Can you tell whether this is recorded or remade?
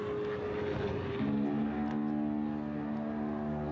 recorded